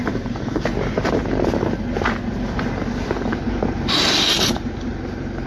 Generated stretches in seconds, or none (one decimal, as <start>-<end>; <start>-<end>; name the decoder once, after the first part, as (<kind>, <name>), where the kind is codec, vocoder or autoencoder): 0.0-1.2 (vocoder, BigVGAN v2); 4.5-4.9